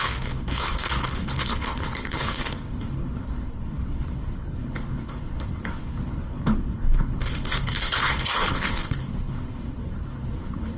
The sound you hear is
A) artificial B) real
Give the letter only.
A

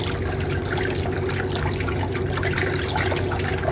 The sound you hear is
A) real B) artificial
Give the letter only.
A